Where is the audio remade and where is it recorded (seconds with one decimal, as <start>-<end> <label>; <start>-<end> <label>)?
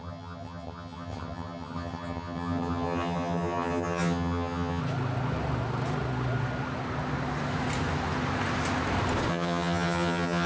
0.0-4.8 remade; 4.8-9.3 recorded; 9.3-10.5 remade